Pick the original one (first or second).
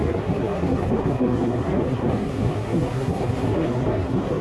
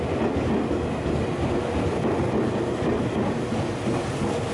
second